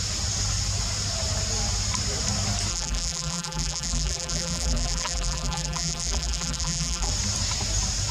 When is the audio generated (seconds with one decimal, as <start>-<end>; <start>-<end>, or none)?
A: 2.7-7.1

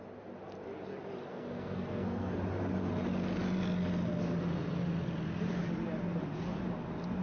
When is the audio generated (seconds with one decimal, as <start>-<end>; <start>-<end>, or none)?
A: 1.3-2.4

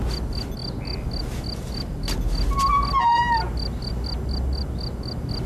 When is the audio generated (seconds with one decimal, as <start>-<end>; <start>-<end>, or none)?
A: none

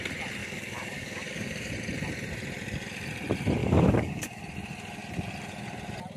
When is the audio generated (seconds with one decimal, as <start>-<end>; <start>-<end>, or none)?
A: 0.4-1.7; 3.6-4.4

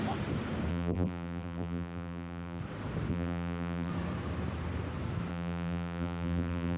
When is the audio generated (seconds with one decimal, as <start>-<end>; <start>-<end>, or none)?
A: 0.7-2.6; 3.1-3.9; 5.3-6.8

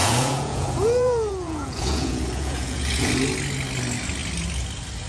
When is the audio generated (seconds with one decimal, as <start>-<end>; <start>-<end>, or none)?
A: 0.0-3.1